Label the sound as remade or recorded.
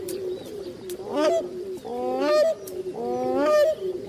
recorded